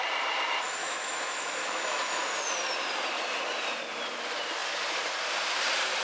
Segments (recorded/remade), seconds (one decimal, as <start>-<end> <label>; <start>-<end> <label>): 0.0-0.8 recorded; 0.8-2.2 remade; 2.2-6.0 recorded